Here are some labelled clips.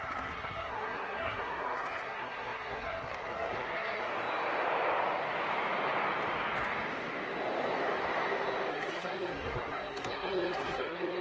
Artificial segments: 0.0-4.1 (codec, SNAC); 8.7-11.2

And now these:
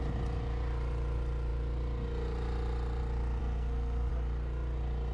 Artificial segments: 3.4-4.1 (codec, SNAC)

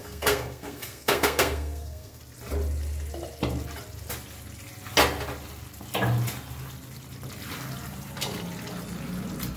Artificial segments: 0.0-2.2 (codec, SNAC)

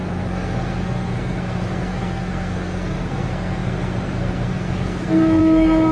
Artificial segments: 0.0-5.9 (codec, SNAC)

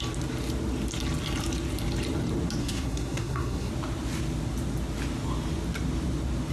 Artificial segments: 2.6-3.7 (codec, SNAC)

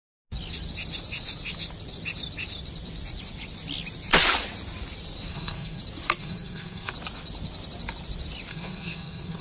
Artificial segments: 5.3-5.8 (codec, SNAC); 6.2-6.9; 8.5-9.4

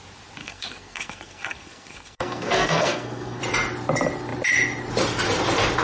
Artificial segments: 0.4-3.4 (codec, SNAC)

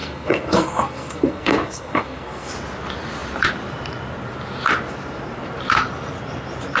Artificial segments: 0.0-2.5 (codec, SNAC)